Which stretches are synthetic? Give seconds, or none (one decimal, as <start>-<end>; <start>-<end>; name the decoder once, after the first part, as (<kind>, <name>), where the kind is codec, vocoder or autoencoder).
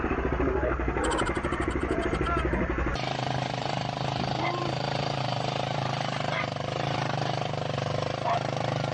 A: 0.0-8.9 (vocoder, BigVGAN v2)